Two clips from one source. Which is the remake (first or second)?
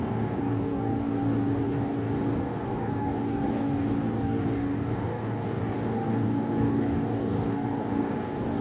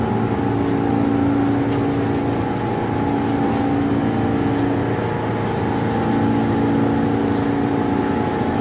first